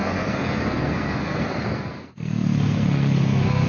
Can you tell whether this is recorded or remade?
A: remade